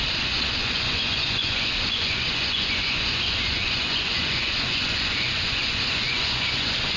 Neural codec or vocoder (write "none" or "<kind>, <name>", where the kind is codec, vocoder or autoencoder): vocoder, Vocos